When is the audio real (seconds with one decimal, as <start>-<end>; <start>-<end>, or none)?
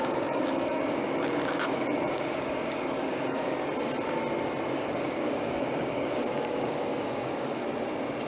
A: 3.4-4.7; 7.6-8.3